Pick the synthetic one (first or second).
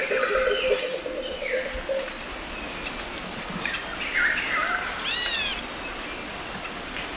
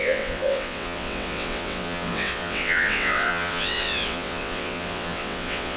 second